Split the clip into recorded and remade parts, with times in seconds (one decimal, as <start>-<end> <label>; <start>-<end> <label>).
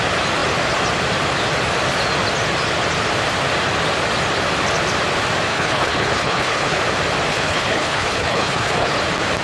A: 0.0-5.5 recorded; 5.5-6.8 remade; 6.8-7.3 recorded; 7.3-8.9 remade; 8.9-9.4 recorded